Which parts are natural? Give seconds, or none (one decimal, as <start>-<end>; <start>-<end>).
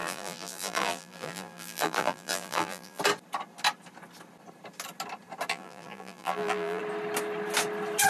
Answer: 3.0-5.5; 6.8-8.1